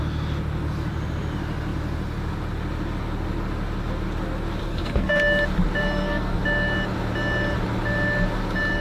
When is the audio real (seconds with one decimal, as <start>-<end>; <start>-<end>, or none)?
0.0-4.6; 5.2-5.8; 6.4-8.8